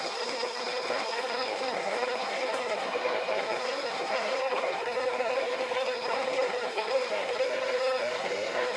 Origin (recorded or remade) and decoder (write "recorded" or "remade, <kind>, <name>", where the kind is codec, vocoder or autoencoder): remade, codec, SNAC